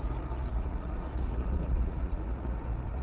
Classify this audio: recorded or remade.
remade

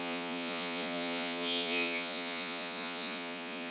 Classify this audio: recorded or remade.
remade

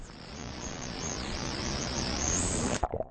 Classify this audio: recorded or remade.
remade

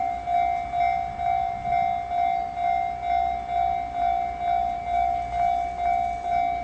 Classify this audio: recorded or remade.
recorded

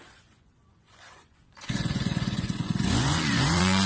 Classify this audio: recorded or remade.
remade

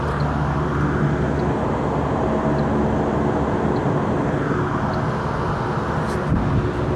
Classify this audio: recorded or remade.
recorded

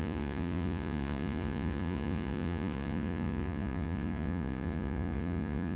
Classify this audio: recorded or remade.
remade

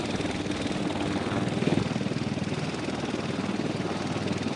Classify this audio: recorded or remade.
recorded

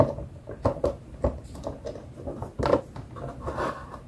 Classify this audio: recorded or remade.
recorded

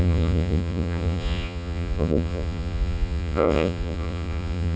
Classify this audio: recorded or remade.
remade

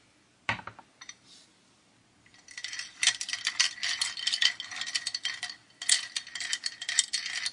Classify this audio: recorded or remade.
recorded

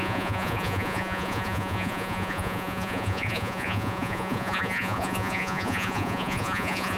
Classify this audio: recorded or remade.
remade